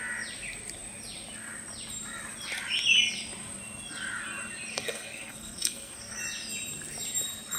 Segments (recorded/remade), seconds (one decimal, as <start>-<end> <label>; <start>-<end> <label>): 0.0-4.7 recorded; 4.7-6.2 remade; 6.2-7.6 recorded